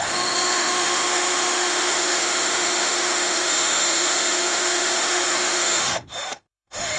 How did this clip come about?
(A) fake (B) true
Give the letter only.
A